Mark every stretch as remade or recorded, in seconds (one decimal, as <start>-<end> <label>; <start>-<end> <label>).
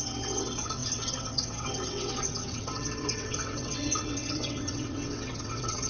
0.0-5.9 remade